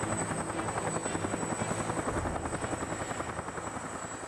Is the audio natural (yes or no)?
yes